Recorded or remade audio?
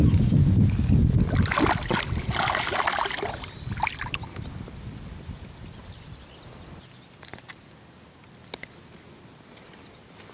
recorded